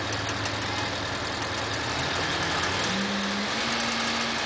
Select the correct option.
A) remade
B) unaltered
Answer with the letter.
B